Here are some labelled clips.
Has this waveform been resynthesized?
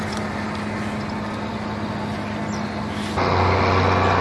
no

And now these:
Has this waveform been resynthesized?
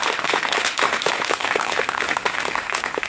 yes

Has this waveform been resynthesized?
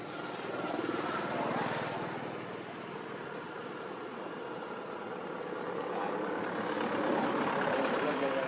no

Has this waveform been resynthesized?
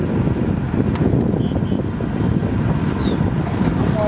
no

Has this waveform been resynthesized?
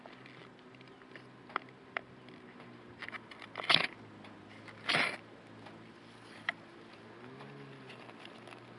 no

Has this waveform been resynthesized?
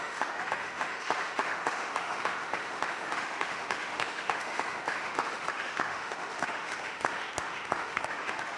yes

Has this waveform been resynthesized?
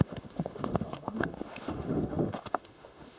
yes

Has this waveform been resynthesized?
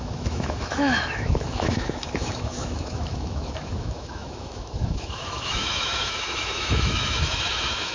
yes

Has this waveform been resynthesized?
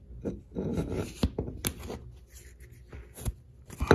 no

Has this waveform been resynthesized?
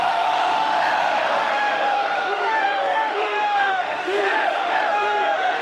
yes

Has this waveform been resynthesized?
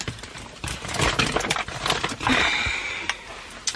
no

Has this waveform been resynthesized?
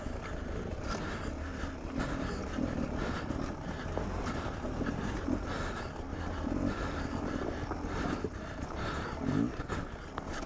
no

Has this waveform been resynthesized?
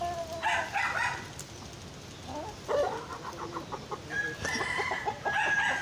no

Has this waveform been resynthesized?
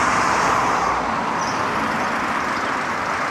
no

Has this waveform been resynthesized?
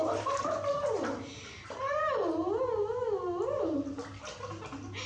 no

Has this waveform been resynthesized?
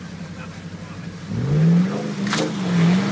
no